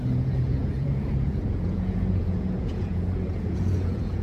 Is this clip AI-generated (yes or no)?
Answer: yes